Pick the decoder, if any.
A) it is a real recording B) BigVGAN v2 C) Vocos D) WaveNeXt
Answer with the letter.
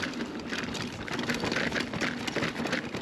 A